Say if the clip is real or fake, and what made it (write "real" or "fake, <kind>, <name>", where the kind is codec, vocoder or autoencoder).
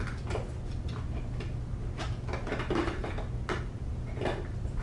real